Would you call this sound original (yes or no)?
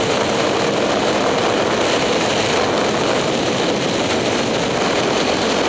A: yes